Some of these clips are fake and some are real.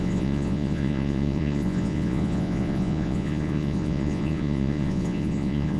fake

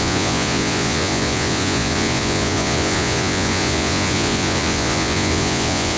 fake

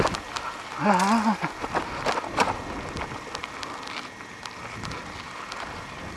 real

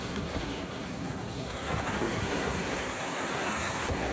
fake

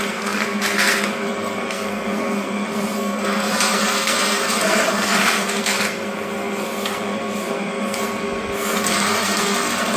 fake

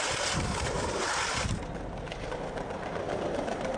fake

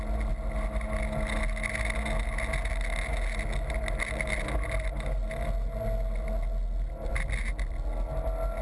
real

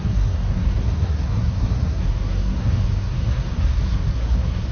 fake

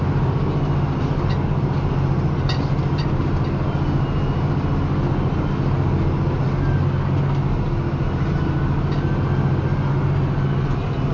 real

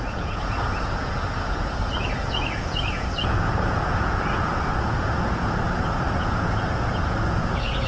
fake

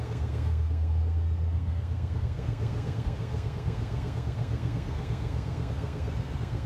fake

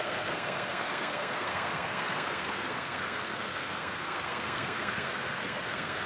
fake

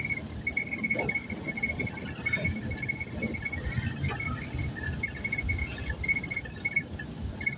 real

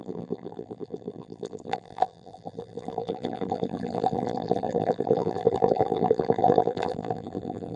fake